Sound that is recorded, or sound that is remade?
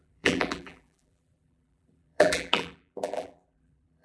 remade